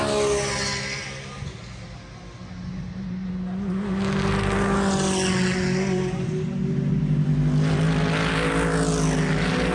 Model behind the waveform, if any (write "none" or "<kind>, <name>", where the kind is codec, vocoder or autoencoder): none